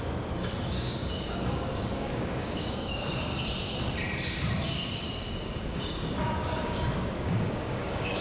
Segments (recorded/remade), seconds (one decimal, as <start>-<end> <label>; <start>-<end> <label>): 0.0-3.3 remade; 3.3-4.9 recorded; 4.9-8.2 remade

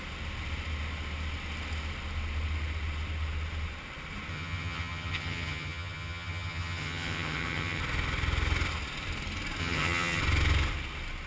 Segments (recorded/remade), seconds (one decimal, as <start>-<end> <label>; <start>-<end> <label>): 0.0-4.3 recorded; 4.3-7.8 remade; 7.8-9.6 recorded; 9.6-10.2 remade; 10.2-11.3 recorded

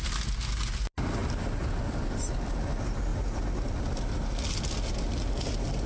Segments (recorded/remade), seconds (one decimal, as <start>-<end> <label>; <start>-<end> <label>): 0.0-5.9 recorded

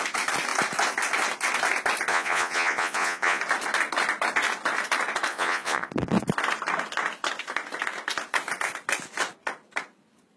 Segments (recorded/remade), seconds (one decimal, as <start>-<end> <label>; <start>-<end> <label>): 0.0-2.1 recorded; 2.1-3.4 remade; 3.4-5.3 recorded; 5.3-5.9 remade; 5.9-10.4 recorded

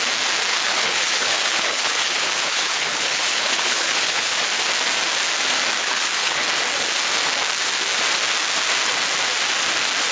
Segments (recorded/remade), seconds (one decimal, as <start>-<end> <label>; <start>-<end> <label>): 0.0-0.5 recorded; 0.5-4.3 remade; 4.3-5.8 recorded; 5.8-6.4 remade; 6.4-10.1 recorded

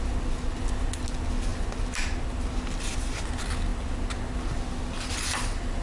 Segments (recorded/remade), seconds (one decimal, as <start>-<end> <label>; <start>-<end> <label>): 0.0-5.8 recorded

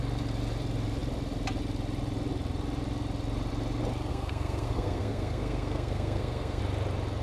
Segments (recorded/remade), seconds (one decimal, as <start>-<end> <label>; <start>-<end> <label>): 0.0-4.1 recorded; 4.1-6.6 remade; 6.6-7.2 recorded

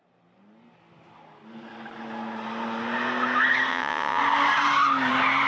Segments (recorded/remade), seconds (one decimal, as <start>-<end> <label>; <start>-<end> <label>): 0.0-3.7 recorded; 3.7-4.2 remade; 4.2-5.5 recorded